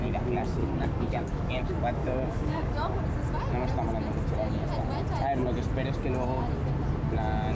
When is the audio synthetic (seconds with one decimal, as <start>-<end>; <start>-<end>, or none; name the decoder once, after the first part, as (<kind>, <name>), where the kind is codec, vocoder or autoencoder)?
0.6-1.5 (codec, DAC); 2.0-3.0